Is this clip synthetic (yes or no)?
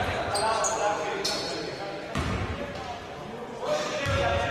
no